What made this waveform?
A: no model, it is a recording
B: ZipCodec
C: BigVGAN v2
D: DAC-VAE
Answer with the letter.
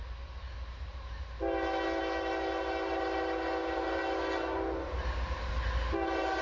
A